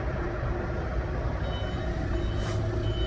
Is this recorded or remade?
recorded